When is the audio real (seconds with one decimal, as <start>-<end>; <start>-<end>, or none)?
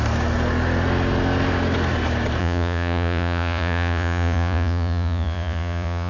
0.0-2.4